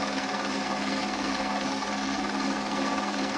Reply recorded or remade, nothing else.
remade